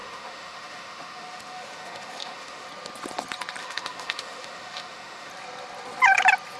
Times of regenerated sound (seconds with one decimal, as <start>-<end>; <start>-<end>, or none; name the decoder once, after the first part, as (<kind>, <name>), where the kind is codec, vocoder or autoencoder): 0.0-2.7 (autoencoder, DAC-VAE); 3.6-5.3